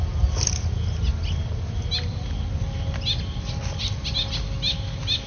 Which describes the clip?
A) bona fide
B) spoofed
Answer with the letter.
A